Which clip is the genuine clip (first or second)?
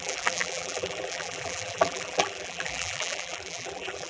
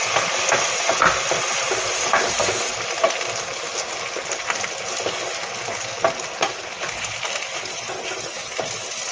second